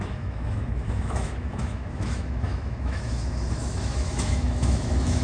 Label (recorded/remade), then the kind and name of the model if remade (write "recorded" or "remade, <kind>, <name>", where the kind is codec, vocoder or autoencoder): remade, autoencoder, DAC-VAE